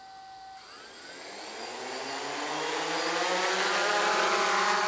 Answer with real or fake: real